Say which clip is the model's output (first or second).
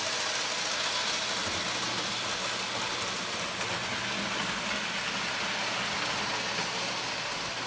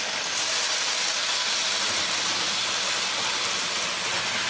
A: second